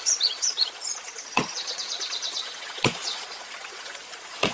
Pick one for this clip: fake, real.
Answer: fake